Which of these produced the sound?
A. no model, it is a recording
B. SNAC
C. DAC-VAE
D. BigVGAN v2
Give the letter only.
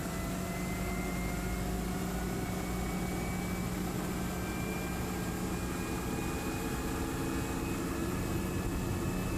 A